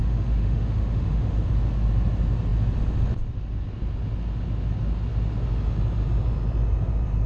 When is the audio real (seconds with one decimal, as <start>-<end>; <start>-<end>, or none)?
1.5-7.3